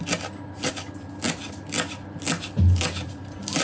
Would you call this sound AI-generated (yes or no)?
no